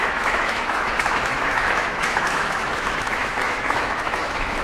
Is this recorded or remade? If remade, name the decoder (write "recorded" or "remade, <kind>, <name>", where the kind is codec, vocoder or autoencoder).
remade, autoencoder, DAC-VAE